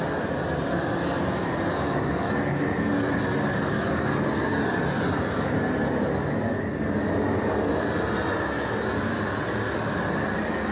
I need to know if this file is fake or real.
real